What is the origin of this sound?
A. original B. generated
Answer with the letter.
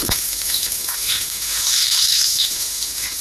B